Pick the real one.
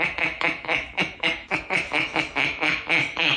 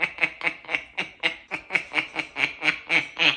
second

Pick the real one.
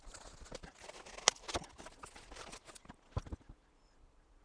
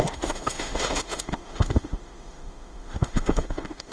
first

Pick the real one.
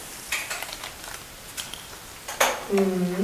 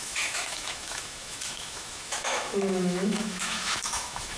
first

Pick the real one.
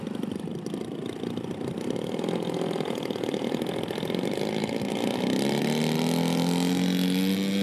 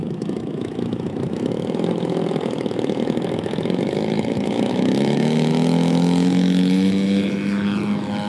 first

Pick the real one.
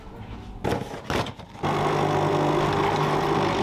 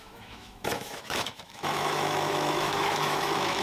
first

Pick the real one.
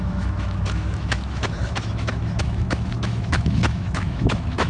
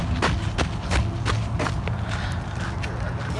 second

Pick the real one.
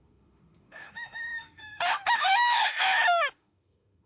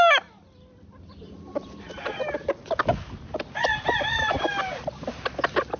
second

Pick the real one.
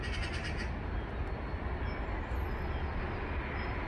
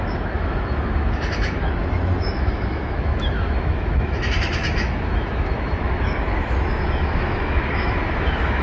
first